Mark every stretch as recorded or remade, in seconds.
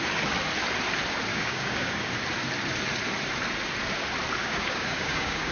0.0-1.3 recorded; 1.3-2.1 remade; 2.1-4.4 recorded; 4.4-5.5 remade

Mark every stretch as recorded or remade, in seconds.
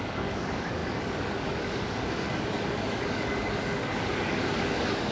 0.0-5.1 remade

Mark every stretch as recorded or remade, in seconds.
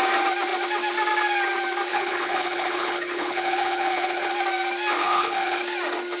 0.0-1.9 recorded; 1.9-4.3 remade; 4.3-5.0 recorded; 5.0-5.6 remade; 5.6-6.2 recorded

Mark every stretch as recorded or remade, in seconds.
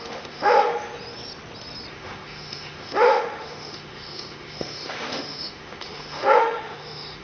0.0-0.9 remade; 0.9-1.9 recorded; 1.9-7.2 remade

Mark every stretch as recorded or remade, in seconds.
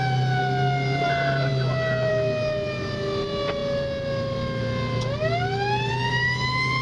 0.0-6.8 recorded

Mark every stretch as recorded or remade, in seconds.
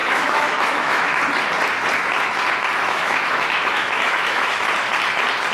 0.0-1.2 remade; 1.2-2.8 recorded; 2.8-4.7 remade; 4.7-5.5 recorded